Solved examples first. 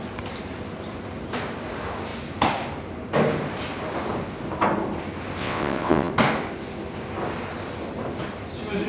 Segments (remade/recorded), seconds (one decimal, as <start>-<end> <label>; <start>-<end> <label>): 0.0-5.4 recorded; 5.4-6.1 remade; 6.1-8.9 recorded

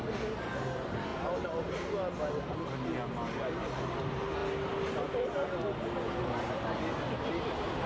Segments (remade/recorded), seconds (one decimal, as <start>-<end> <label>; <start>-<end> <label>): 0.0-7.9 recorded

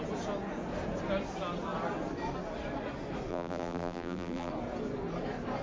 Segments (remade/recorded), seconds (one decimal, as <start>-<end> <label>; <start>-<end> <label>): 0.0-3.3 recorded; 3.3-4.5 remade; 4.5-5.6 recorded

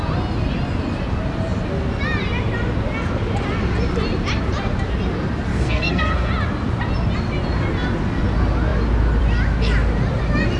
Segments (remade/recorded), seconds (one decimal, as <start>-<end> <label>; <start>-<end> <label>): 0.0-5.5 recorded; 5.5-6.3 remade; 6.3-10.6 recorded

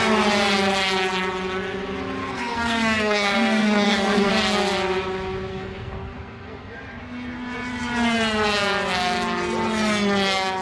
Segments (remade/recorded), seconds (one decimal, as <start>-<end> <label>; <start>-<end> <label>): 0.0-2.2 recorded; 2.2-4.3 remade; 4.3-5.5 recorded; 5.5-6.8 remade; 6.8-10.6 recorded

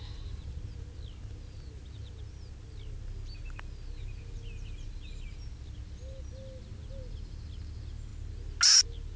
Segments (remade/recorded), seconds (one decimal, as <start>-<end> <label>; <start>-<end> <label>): 0.0-9.2 recorded

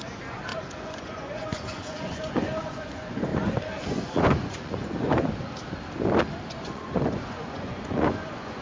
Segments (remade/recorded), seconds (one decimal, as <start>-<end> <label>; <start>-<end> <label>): 0.0-3.3 remade; 3.3-3.9 recorded; 3.9-5.2 remade; 5.2-6.5 recorded; 6.5-8.6 remade

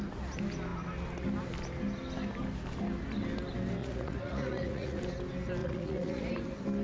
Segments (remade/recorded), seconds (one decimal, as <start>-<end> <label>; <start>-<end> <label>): 0.0-3.8 recorded; 3.8-5.0 remade; 5.0-5.6 recorded; 5.6-6.3 remade; 6.3-6.8 recorded